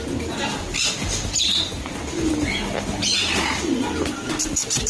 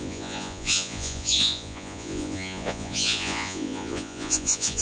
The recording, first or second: first